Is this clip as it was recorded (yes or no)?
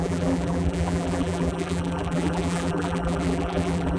no